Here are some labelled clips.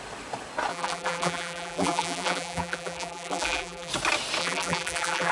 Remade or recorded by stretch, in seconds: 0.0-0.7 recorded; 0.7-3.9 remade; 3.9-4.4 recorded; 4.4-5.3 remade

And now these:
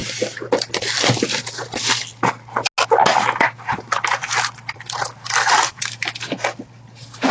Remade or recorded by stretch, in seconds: 0.0-7.3 recorded

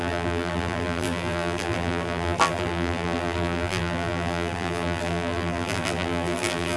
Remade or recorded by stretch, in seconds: 0.0-6.8 remade

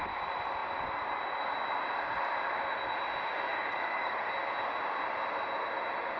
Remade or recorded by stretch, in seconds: 0.0-3.5 recorded; 3.5-4.3 remade; 4.3-6.2 recorded

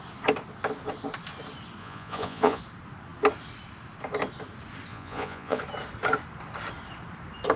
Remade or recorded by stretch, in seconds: 0.0-1.8 recorded; 1.8-2.6 remade; 2.6-4.9 recorded; 4.9-5.6 remade; 5.6-7.6 recorded

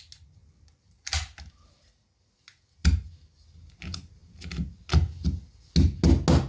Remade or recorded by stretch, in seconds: 0.0-0.4 recorded; 0.4-1.7 remade; 1.7-6.5 recorded

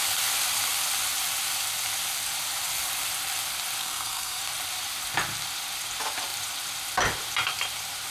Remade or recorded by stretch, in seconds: 0.0-3.8 recorded; 3.8-4.4 remade; 4.4-8.1 recorded